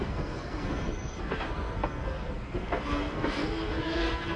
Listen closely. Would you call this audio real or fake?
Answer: fake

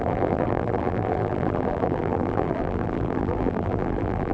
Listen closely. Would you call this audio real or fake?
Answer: fake